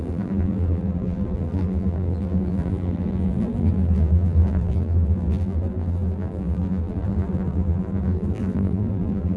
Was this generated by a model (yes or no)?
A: yes